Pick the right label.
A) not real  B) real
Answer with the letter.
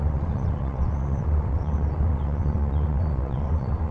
A